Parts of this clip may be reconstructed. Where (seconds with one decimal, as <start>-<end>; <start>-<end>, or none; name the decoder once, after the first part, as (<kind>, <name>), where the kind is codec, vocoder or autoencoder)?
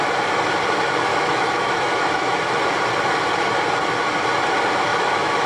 1.1-2.5 (autoencoder, DAC-VAE); 4.9-5.5